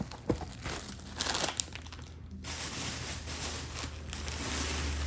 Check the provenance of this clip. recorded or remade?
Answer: recorded